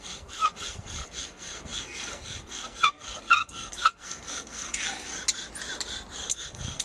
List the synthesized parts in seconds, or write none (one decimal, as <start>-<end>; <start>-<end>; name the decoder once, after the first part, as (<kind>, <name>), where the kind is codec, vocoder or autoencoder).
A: 0.0-5.1 (codec, SNAC); 6.3-6.8